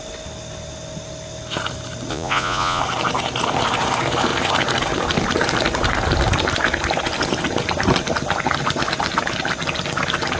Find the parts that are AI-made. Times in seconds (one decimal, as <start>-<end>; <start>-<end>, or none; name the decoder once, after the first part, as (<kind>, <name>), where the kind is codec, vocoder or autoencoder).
2.1-2.8 (vocoder, Vocos)